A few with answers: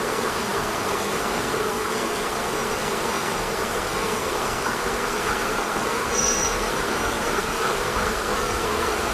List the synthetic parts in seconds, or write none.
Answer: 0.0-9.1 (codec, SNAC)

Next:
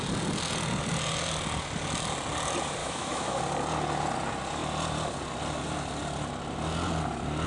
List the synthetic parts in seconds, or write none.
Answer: 2.8-3.4 (autoencoder, DAC-VAE)

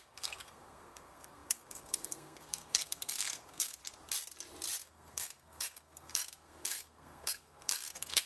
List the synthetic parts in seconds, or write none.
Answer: 0.0-3.8 (codec, SNAC); 4.8-8.3